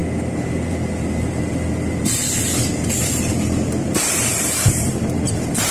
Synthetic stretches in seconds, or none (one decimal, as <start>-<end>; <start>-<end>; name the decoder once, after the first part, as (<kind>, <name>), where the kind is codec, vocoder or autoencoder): 0.7-2.2 (vocoder, BigVGAN v2); 3.0-5.7